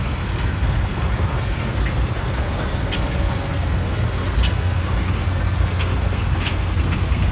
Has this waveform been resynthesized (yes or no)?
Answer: yes